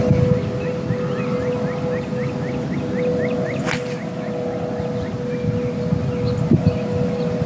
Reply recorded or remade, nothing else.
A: recorded